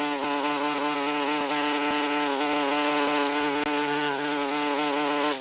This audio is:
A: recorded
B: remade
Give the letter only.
A